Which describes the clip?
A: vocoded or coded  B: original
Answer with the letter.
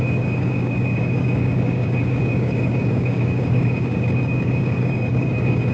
A